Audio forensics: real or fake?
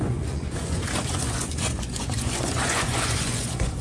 fake